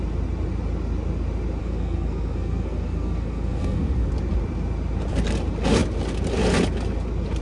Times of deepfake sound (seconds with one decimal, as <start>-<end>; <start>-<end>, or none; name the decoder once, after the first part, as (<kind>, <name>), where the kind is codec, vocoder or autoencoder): 1.6-4.1 (codec, SNAC)

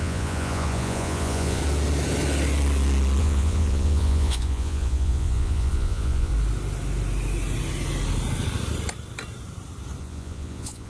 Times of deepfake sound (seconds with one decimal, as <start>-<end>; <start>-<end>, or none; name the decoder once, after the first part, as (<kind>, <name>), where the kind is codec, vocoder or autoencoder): 0.0-1.6 (vocoder, Vocos); 3.2-6.3; 10.0-10.9